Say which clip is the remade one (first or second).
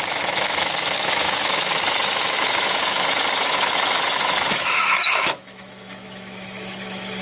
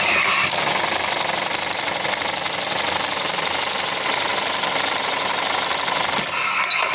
first